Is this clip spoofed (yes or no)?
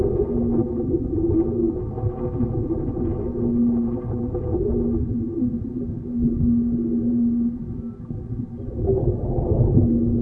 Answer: no